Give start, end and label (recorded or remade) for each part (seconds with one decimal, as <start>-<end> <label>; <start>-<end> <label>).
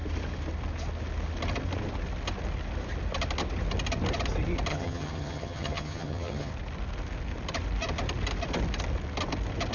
0.0-4.7 recorded; 4.7-6.5 remade; 6.5-9.7 recorded